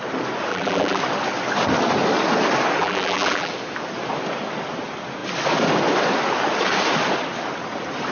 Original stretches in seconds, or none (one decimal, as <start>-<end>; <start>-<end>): 0.0-0.5; 1.0-2.8; 3.5-8.1